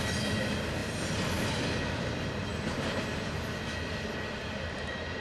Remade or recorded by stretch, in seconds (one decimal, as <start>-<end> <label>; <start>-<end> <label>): 0.0-4.4 recorded; 4.4-5.2 remade